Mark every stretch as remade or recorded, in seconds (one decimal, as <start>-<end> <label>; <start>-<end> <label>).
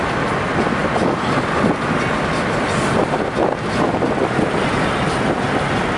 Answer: 0.0-6.0 recorded